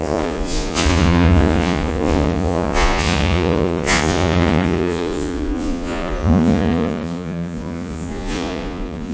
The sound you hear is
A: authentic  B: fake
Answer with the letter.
B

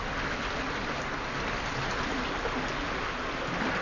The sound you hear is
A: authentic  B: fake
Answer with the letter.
A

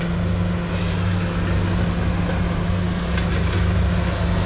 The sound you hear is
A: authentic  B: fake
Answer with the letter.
A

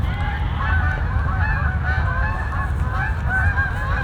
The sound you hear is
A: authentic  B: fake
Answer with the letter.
A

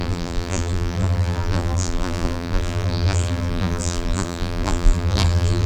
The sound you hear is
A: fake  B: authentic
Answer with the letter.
A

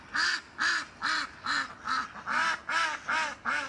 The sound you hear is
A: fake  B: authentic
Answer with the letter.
B